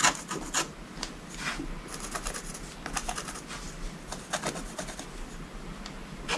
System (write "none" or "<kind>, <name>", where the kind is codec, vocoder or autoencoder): none